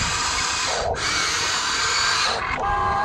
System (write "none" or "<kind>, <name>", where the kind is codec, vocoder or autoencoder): vocoder, BigVGAN v2